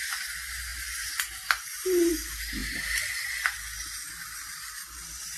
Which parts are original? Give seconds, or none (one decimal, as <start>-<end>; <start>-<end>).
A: 0.0-2.6; 3.3-5.4